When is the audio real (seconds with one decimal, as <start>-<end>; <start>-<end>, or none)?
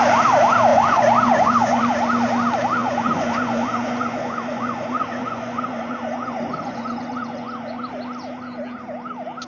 0.0-0.7; 1.8-2.8; 7.8-9.5